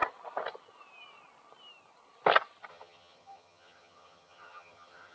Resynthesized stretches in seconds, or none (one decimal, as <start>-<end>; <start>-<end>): 2.7-5.1